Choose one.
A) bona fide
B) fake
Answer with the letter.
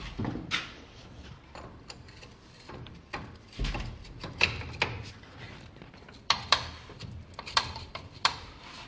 B